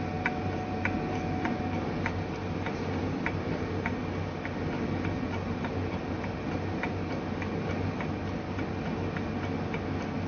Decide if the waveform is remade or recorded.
recorded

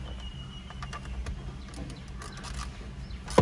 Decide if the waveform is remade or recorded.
recorded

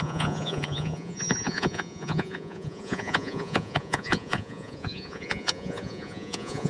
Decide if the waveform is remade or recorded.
remade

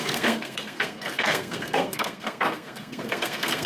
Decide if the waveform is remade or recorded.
remade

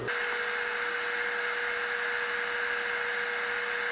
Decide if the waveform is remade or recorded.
recorded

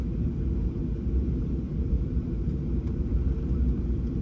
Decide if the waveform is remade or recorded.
recorded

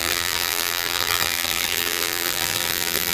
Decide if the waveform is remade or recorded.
remade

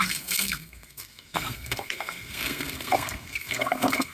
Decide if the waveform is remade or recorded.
remade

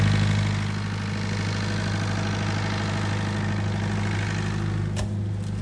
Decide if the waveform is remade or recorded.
recorded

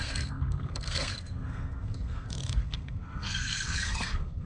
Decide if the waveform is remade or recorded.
remade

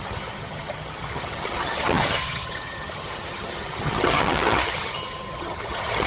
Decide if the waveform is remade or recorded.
remade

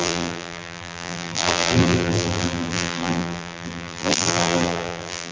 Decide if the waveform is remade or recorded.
remade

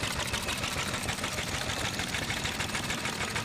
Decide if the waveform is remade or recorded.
recorded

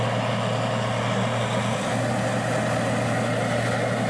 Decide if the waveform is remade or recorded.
recorded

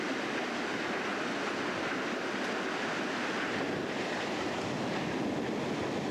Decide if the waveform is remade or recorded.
recorded